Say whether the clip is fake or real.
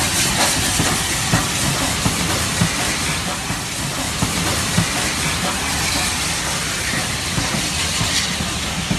real